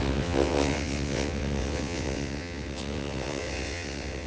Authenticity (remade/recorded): remade